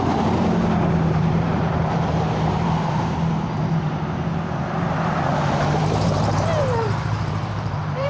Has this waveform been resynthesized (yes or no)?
yes